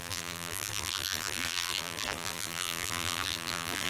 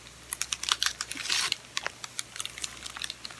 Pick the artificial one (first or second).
first